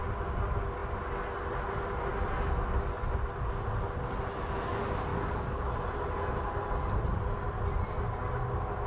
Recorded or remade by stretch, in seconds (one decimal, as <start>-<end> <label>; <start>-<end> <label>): 0.0-5.1 recorded; 5.1-5.7 remade; 5.7-8.9 recorded